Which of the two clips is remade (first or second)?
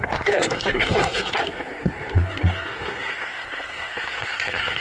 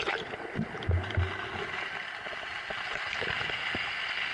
first